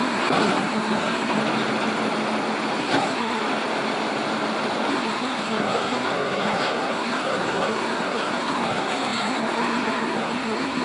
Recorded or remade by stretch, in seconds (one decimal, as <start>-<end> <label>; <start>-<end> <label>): 0.0-1.4 remade; 1.4-2.8 recorded; 2.8-3.4 remade; 3.4-4.9 recorded; 4.9-10.8 remade